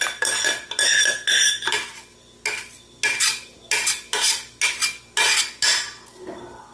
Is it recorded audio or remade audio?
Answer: recorded